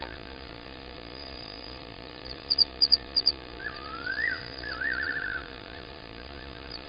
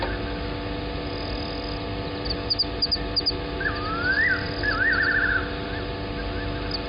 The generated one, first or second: first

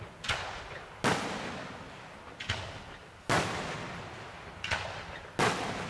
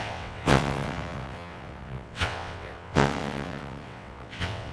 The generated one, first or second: second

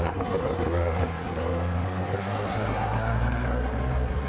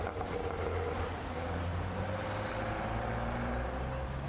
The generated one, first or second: first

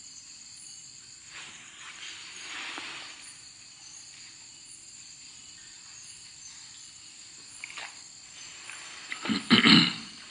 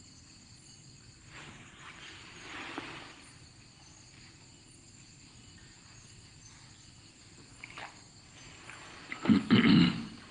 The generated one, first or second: first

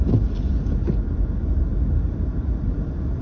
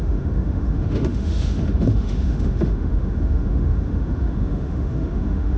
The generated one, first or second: second